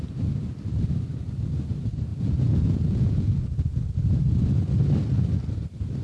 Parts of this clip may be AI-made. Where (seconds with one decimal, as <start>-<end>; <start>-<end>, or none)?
2.1-3.4